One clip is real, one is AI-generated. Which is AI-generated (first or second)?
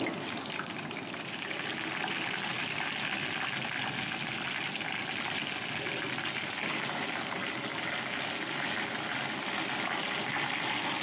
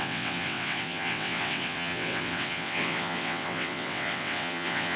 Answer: second